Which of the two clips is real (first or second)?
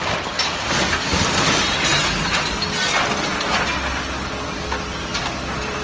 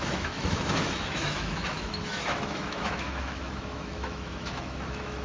first